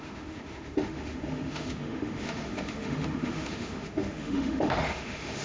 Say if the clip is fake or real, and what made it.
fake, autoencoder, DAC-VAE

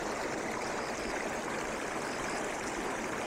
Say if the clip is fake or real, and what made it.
real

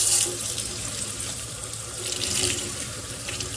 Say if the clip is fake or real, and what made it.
fake, vocoder, BigVGAN v2